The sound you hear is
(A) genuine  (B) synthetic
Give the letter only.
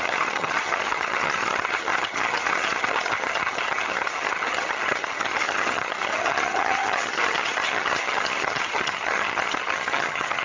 B